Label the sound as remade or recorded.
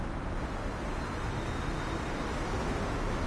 recorded